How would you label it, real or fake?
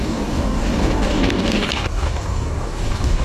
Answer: fake